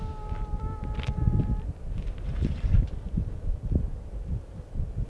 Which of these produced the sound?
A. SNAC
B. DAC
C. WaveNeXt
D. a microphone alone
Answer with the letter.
D